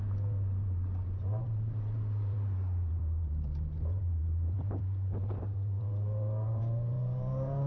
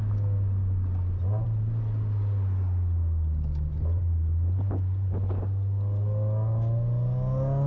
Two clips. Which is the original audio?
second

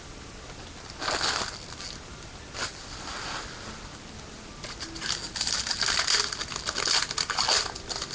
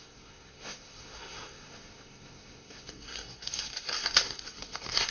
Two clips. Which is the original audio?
first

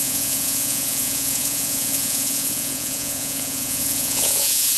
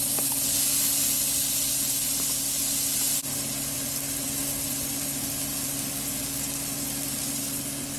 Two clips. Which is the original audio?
second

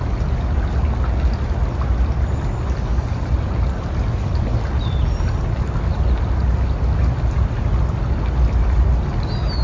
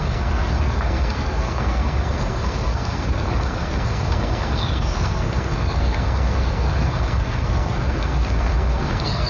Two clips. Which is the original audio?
first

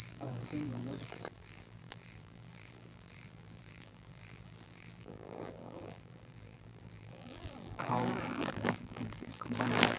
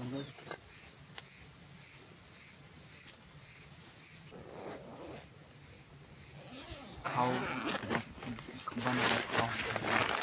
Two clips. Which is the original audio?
second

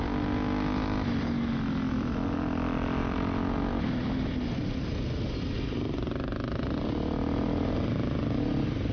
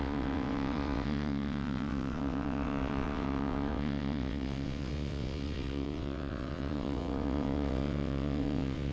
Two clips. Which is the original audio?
first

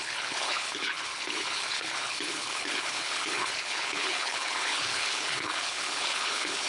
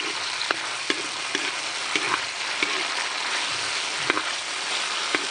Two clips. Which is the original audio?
second